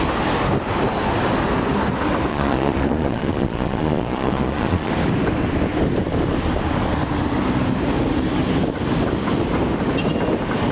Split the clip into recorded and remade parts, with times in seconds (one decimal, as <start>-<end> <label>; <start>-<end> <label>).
0.0-2.3 recorded; 2.3-4.9 remade; 4.9-10.7 recorded